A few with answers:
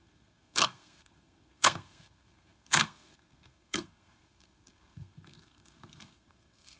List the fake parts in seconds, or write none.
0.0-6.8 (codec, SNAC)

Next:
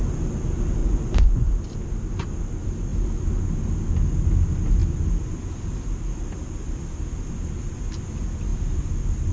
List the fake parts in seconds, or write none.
0.8-1.5 (vocoder, Vocos)

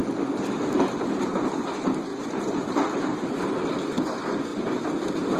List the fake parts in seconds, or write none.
2.1-3.3 (vocoder, BigVGAN v2)

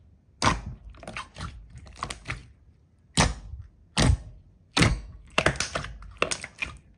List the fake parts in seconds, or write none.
4.9-5.4 (codec, SNAC)

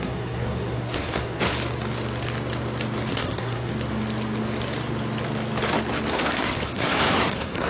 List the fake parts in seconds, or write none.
0.0-1.5 (codec, SNAC); 3.1-3.7; 6.1-7.7